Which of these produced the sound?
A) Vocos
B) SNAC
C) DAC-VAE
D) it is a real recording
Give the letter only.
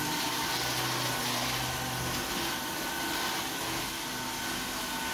D